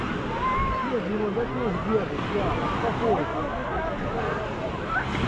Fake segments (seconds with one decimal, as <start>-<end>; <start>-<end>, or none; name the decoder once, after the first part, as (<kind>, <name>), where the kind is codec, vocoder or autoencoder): none